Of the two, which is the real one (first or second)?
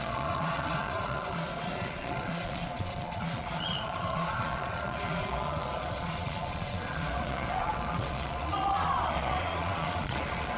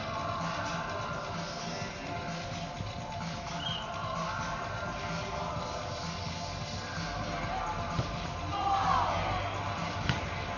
second